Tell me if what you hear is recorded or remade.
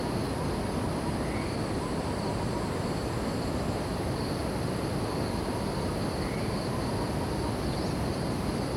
recorded